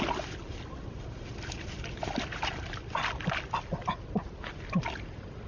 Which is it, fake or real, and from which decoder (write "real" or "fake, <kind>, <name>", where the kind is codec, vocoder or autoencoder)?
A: real